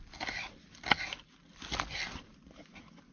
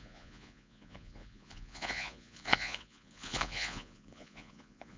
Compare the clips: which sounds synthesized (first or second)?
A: second